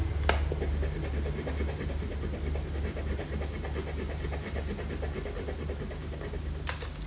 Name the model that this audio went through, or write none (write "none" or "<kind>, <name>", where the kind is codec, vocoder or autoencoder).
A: none